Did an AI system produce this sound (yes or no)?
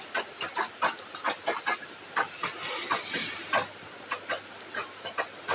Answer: no